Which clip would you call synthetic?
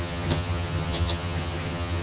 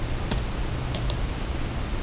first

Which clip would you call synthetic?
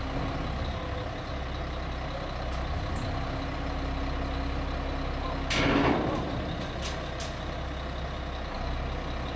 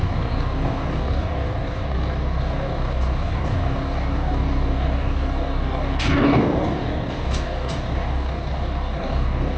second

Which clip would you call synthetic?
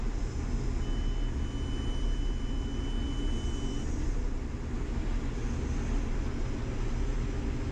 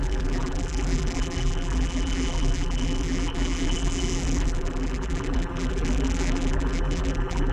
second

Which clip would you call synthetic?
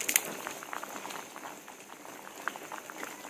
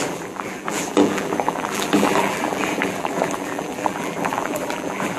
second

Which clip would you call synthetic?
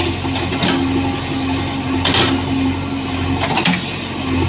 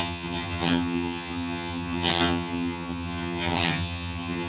second